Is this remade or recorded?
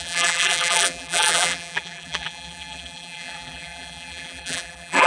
remade